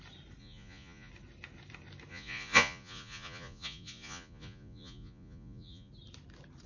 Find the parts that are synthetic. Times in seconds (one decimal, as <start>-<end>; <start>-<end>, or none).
0.4-1.1; 2.1-5.9